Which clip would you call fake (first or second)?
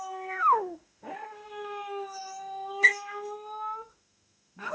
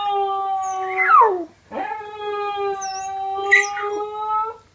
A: first